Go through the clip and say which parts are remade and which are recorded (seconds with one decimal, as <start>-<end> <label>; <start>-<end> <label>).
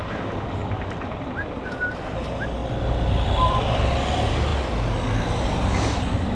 0.0-0.6 recorded; 0.6-1.3 remade; 1.3-2.6 recorded; 2.6-3.9 remade; 3.9-6.3 recorded